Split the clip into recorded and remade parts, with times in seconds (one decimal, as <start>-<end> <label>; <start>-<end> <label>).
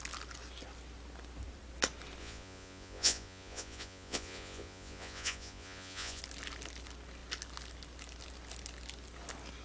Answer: 0.0-2.2 recorded; 2.2-6.2 remade; 6.2-9.6 recorded